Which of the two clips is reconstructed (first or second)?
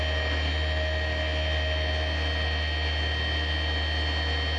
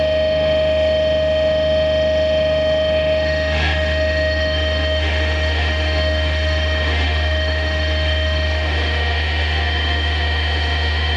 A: second